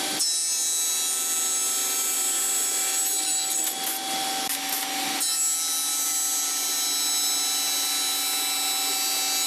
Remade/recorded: recorded